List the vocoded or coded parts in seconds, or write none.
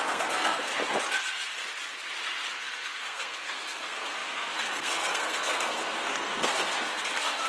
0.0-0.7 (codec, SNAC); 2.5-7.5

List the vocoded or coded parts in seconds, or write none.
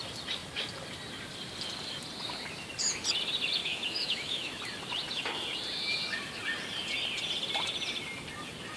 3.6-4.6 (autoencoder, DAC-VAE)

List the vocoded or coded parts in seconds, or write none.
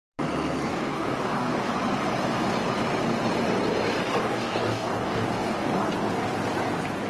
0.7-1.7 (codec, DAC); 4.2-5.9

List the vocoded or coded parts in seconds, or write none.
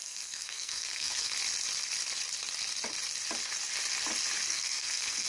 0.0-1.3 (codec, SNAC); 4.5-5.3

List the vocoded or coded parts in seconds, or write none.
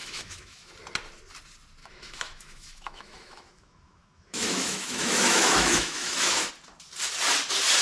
0.0-0.7 (autoencoder, DAC-VAE); 1.8-6.5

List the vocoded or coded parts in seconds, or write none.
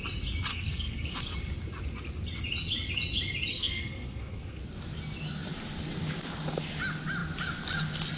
0.5-1.2 (codec, SNAC); 3.5-4.6